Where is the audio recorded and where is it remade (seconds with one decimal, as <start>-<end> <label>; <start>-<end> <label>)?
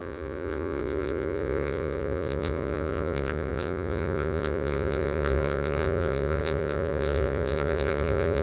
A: 0.0-8.4 remade